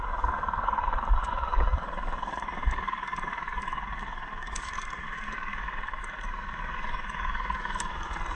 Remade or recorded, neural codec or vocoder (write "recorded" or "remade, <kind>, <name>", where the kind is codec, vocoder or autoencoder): remade, codec, DAC